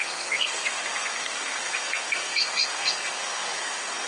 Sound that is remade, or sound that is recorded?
remade